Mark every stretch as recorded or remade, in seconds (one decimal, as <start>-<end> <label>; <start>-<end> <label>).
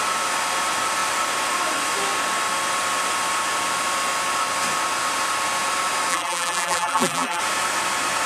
0.0-6.1 recorded; 6.1-7.4 remade; 7.4-8.3 recorded